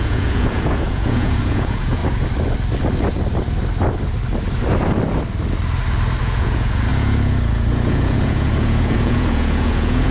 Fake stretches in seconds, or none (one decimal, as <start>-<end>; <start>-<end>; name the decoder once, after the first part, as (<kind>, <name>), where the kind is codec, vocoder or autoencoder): 0.0-2.0 (vocoder, Vocos); 6.2-10.1